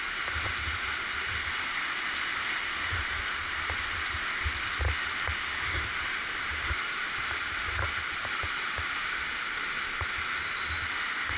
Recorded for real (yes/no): yes